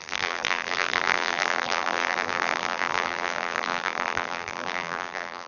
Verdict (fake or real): fake